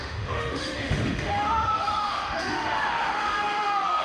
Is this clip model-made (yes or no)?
yes